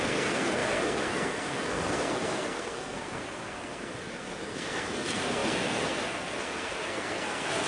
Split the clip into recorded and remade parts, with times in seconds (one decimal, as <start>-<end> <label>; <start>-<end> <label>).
0.0-7.7 remade